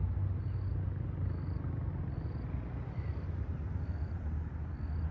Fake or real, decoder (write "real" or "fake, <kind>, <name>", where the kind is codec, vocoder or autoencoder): real